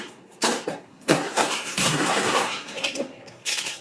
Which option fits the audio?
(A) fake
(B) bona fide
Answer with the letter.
A